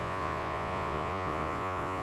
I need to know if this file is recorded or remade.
remade